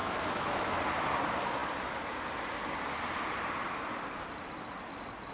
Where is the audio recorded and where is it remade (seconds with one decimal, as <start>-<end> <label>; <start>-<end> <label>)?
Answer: 0.0-0.8 remade; 0.8-5.3 recorded